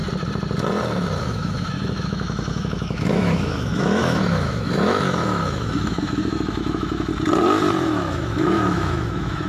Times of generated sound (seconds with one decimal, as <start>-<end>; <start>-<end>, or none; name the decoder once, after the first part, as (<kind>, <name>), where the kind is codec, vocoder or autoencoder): 1.2-7.1 (autoencoder, DAC-VAE); 7.8-9.5